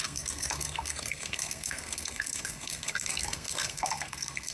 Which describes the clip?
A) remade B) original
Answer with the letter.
A